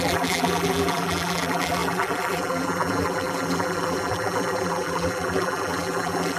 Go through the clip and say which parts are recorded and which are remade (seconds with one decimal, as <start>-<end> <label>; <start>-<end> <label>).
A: 0.0-6.4 remade